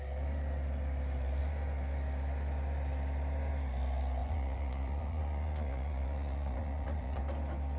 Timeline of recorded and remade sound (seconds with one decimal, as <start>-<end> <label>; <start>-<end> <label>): 0.0-4.2 recorded; 4.2-7.2 remade; 7.2-7.8 recorded